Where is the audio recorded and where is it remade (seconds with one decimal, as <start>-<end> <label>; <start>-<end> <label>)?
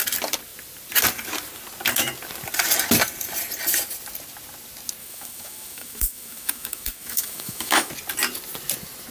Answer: 0.0-5.0 recorded; 5.0-7.9 remade; 7.9-9.1 recorded